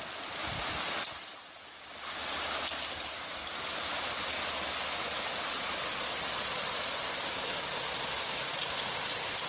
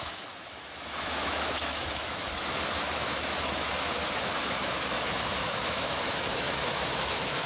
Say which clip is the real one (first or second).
first